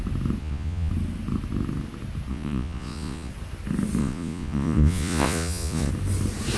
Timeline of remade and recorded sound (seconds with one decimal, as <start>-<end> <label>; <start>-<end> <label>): 0.0-0.4 recorded; 0.4-0.9 remade; 0.9-2.3 recorded; 2.3-3.3 remade; 3.3-4.0 recorded; 4.0-5.9 remade; 5.9-6.6 recorded